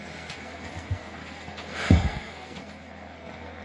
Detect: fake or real fake